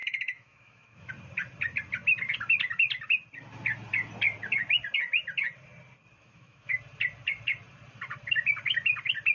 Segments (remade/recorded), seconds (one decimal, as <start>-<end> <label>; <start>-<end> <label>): 0.0-1.1 remade; 1.1-6.2 recorded; 6.2-6.8 remade; 6.8-9.3 recorded